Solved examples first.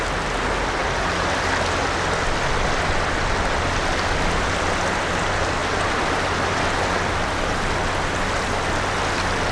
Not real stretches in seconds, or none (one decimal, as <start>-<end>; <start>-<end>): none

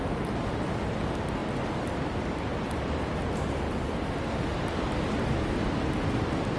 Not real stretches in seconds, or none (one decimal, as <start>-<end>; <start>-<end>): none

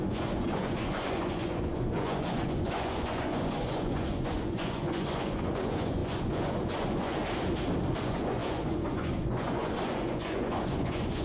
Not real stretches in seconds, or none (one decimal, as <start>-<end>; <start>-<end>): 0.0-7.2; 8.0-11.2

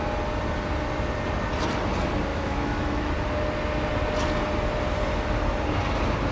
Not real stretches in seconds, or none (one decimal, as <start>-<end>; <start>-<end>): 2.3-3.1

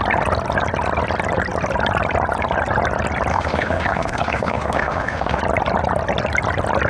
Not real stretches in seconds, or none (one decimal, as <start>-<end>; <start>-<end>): 3.3-5.4

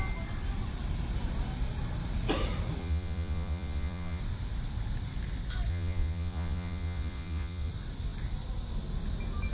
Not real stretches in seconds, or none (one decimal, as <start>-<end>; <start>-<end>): 2.8-4.2; 5.7-7.7

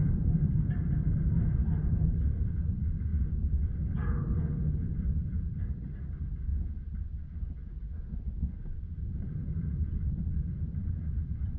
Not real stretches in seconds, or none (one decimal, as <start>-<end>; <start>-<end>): 0.0-3.1; 4.2-6.5; 8.0-11.6